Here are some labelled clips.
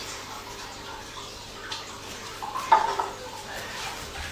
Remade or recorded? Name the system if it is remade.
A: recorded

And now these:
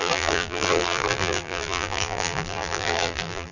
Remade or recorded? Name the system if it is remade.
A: remade, vocoder, BigVGAN v2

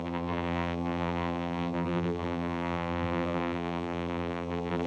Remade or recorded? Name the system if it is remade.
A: remade, vocoder, BigVGAN v2